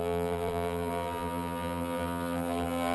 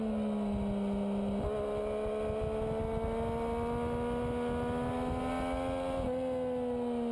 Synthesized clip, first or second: first